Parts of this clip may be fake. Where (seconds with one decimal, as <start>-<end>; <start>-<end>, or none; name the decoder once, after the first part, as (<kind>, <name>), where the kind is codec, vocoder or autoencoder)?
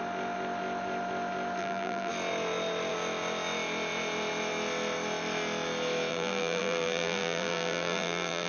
1.6-2.1 (vocoder, BigVGAN v2); 6.1-8.5